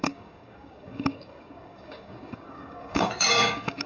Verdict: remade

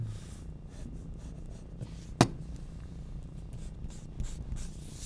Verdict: recorded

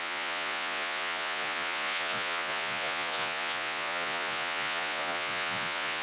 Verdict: remade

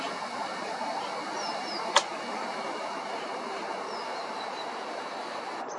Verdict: remade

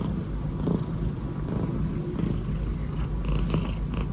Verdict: recorded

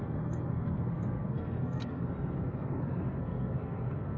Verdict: remade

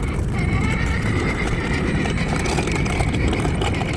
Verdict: recorded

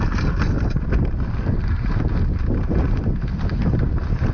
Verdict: recorded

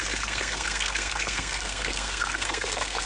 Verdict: remade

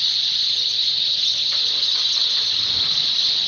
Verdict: remade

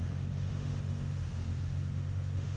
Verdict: remade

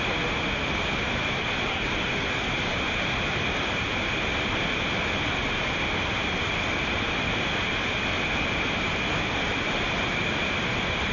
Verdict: recorded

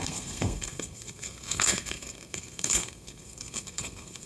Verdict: remade